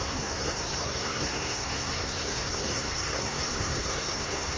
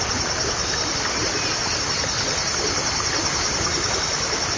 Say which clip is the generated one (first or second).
first